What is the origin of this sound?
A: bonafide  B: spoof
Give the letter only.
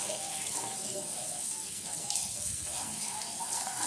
B